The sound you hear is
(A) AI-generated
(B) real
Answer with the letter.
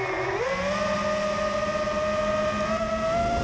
B